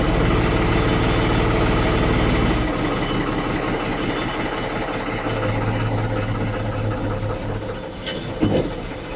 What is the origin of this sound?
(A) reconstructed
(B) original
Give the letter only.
B